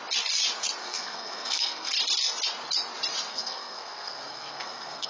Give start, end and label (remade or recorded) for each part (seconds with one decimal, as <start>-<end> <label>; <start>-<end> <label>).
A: 0.0-0.8 recorded; 0.8-1.9 remade; 1.9-3.3 recorded; 3.3-5.1 remade